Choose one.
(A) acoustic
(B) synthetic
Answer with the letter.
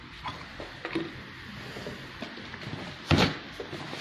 A